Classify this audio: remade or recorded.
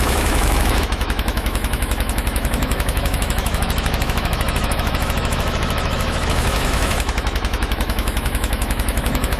remade